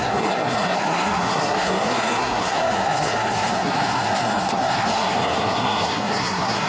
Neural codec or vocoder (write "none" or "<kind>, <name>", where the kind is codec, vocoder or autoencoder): codec, SNAC